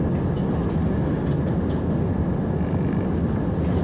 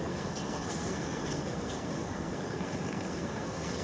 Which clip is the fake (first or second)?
second